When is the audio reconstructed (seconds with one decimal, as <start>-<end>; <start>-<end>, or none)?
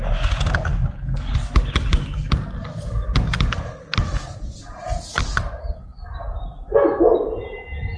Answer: none